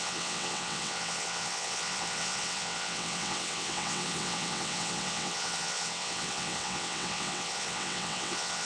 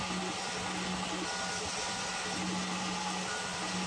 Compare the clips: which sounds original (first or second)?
second